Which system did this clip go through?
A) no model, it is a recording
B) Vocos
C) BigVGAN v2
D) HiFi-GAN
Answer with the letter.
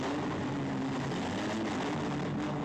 A